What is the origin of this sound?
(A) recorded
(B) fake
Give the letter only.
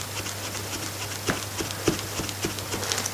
A